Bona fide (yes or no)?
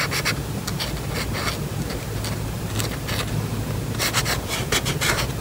yes